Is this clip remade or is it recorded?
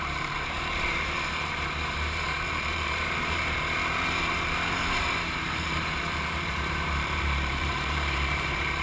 remade